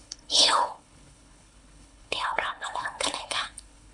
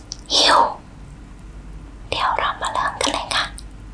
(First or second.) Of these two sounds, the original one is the second